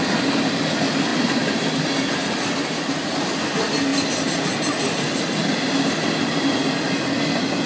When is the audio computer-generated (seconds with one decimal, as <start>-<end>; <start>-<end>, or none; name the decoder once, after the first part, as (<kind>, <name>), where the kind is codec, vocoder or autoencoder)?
none